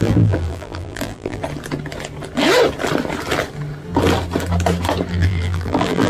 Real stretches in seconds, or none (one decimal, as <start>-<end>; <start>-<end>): 1.4-5.1